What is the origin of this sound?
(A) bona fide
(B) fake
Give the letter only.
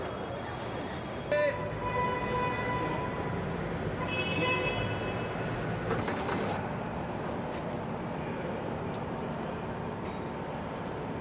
A